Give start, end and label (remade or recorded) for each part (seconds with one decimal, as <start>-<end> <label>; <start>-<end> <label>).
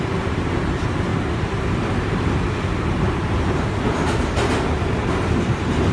0.0-5.9 recorded